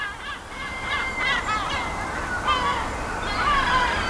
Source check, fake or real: real